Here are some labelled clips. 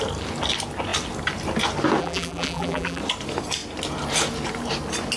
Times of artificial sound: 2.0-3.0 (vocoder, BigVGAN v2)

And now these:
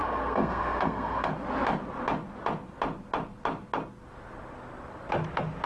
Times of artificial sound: 0.0-1.3 (codec, SNAC)

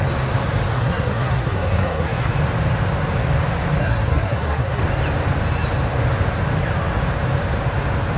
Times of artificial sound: 0.7-2.3 (codec, SNAC); 3.8-4.8

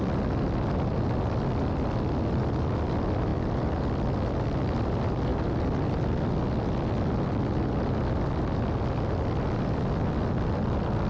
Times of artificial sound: none

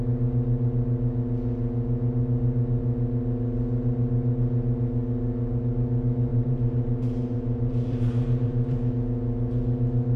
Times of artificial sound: 6.3-8.9 (vocoder, BigVGAN v2)

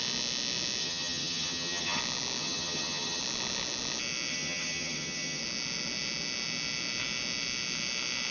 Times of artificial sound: 0.8-2.0 (vocoder, HiFi-GAN); 2.4-3.2; 4.3-5.4

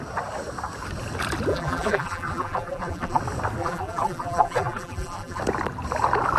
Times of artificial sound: 1.5-3.2 (vocoder, BigVGAN v2); 3.6-5.4

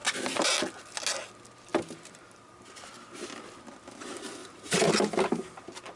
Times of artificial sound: 1.7-2.5 (vocoder, BigVGAN v2); 4.4-4.9